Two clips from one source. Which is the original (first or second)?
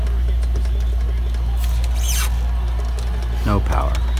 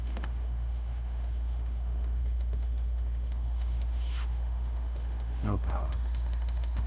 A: first